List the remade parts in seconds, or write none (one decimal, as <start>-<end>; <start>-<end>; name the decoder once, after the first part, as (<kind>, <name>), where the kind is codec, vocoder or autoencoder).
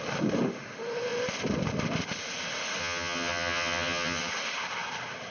2.8-4.3 (vocoder, HiFi-GAN)